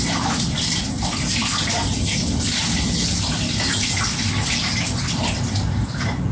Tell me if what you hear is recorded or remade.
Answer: recorded